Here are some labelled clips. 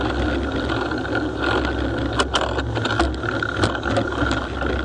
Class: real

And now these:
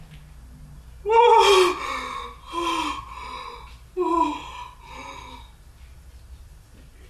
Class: real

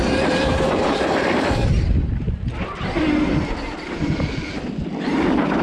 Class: real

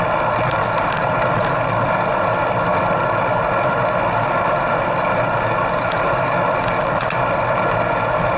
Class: real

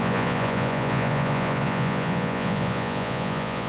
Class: fake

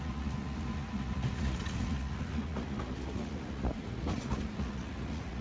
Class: fake